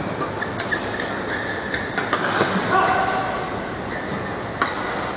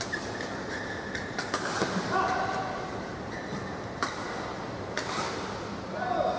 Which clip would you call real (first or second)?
first